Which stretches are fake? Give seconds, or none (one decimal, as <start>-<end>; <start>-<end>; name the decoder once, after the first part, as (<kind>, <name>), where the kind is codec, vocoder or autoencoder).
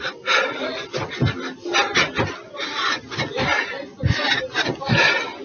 none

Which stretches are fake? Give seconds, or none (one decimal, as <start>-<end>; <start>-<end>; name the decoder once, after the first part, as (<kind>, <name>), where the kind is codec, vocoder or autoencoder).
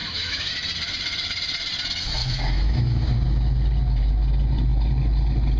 0.0-0.5 (autoencoder, DAC-VAE); 2.2-3.0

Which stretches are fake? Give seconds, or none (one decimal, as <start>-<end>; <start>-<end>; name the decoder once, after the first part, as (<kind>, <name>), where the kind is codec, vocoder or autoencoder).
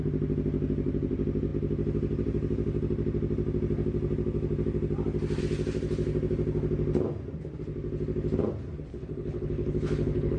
8.9-10.4 (codec, HILCodec)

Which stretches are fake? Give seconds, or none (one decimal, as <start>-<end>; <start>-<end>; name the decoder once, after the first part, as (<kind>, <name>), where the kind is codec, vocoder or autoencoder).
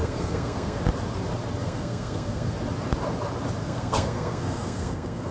0.0-0.8 (codec, SNAC); 1.6-2.5; 3.6-5.3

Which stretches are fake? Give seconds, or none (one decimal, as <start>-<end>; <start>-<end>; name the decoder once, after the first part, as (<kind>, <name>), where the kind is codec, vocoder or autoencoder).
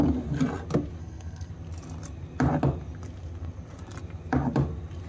1.0-1.5 (codec, SNAC)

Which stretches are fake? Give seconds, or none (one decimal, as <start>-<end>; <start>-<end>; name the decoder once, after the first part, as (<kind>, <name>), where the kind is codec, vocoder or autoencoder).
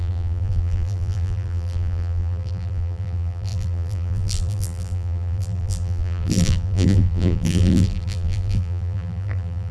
0.0-9.7 (vocoder, BigVGAN v2)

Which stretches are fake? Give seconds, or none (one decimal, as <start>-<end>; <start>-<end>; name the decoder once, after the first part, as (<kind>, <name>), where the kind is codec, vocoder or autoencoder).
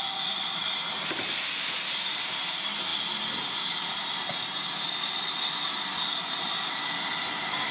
none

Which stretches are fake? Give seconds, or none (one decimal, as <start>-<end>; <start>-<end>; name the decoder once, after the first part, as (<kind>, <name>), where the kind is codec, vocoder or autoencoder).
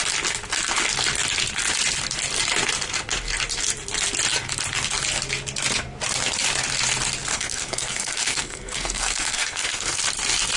7.3-10.0 (codec, SNAC)